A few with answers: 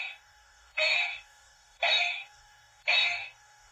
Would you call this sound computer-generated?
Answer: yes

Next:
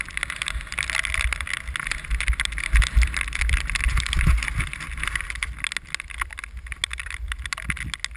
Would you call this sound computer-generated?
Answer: no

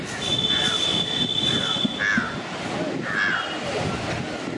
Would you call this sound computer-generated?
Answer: no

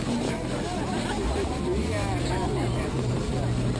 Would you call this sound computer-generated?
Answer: no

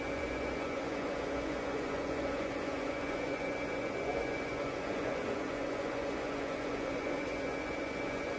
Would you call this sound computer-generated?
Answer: yes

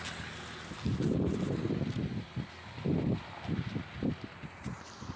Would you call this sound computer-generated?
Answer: no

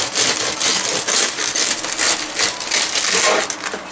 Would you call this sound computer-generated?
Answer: no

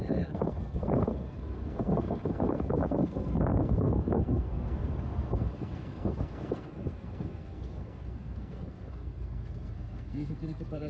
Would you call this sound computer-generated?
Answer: yes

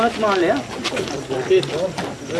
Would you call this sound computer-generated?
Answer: no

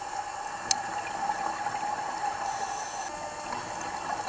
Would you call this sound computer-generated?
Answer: no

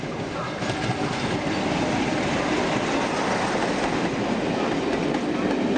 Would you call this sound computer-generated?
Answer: no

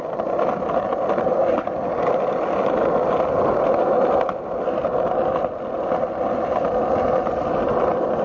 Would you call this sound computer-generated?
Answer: no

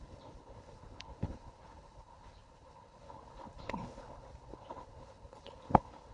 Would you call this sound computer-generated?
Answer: yes